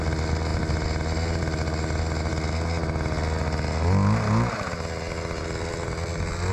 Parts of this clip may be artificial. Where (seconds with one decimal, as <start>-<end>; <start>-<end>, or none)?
none

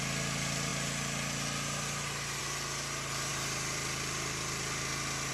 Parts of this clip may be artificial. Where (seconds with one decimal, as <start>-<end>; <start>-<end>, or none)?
none